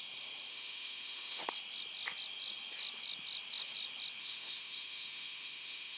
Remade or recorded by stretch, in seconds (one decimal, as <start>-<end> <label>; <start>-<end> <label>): 0.0-0.5 recorded; 0.5-1.4 remade; 1.4-4.2 recorded; 4.2-6.0 remade